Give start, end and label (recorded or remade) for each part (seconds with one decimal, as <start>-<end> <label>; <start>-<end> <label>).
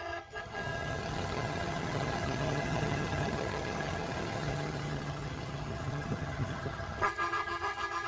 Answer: 0.0-8.1 remade